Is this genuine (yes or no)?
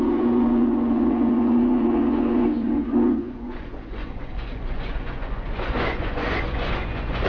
no